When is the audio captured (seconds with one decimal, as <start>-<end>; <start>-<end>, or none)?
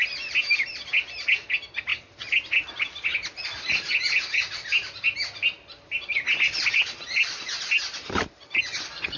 0.0-9.2